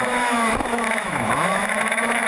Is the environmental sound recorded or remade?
remade